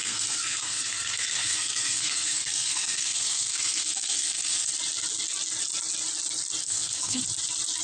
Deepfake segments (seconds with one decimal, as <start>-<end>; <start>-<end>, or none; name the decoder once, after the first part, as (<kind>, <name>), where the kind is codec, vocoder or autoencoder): 0.0-4.7 (codec, SNAC); 6.6-7.2